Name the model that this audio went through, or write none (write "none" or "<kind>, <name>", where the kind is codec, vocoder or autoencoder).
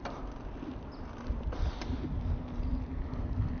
none